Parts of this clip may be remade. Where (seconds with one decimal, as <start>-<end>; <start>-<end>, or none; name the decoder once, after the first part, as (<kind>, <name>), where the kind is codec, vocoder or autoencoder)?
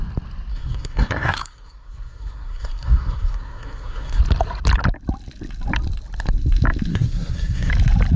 0.5-4.2 (codec, SNAC); 6.9-7.7